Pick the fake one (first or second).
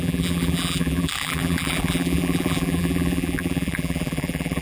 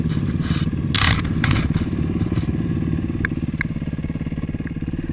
first